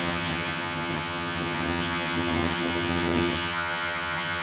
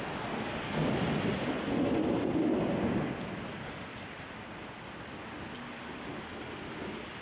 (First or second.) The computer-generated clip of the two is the first